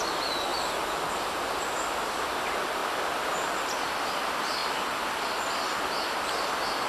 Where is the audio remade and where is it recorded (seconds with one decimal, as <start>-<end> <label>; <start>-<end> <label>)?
0.0-6.9 recorded